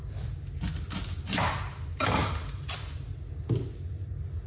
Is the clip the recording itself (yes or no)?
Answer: yes